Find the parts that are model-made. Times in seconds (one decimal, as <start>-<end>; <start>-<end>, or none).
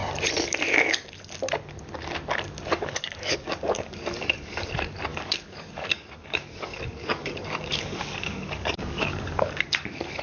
2.7-4.6; 5.1-10.2